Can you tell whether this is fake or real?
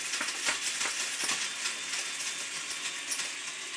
real